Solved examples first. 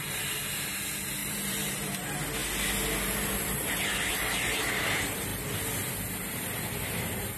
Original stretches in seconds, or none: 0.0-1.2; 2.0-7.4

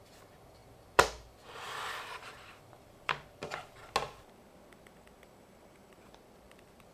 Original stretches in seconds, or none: 3.8-6.2

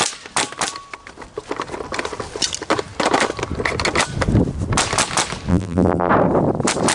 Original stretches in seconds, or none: 0.0-5.5; 6.1-6.9